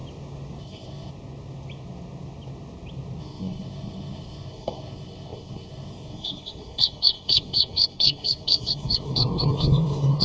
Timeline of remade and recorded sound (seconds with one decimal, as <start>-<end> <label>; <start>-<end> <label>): 0.0-0.6 recorded; 0.6-1.1 remade; 1.1-3.2 recorded; 3.2-10.2 remade